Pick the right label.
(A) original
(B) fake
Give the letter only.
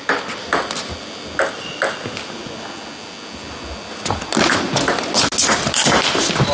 A